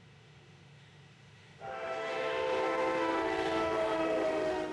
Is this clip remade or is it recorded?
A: remade